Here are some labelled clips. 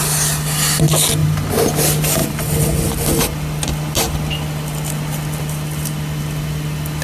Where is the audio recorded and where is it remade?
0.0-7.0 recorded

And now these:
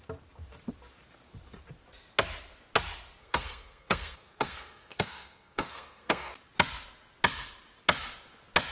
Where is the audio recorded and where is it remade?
0.0-3.2 recorded; 3.2-6.3 remade; 6.3-8.7 recorded

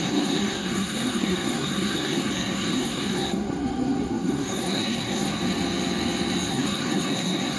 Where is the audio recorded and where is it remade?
0.0-5.4 remade; 5.4-6.5 recorded; 6.5-7.6 remade

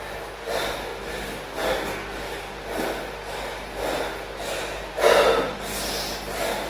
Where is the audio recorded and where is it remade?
0.0-6.7 recorded

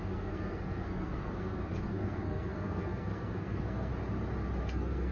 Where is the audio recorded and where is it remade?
0.0-3.9 remade; 3.9-4.6 recorded; 4.6-5.1 remade

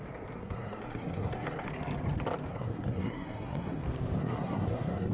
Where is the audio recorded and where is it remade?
0.0-0.4 recorded; 0.4-1.7 remade; 1.7-2.5 recorded; 2.5-3.8 remade; 3.8-4.2 recorded; 4.2-5.1 remade